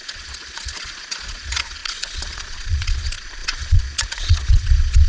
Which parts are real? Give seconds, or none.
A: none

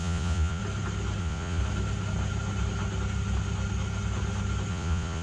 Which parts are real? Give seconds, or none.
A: 0.6-1.2; 1.6-4.7

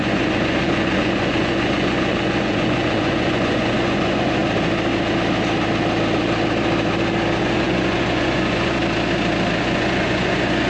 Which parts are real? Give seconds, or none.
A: 4.4-7.4; 8.8-9.6